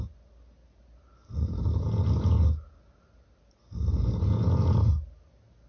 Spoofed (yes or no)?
no